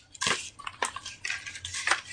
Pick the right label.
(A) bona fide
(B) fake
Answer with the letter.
A